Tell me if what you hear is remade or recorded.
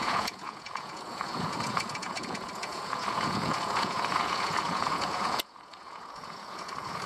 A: remade